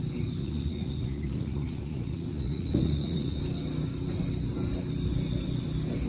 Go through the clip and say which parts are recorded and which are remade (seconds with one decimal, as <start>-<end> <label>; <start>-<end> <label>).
0.0-0.4 recorded; 0.4-3.4 remade; 3.4-6.1 recorded